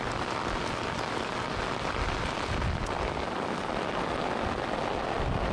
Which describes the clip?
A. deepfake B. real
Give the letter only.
B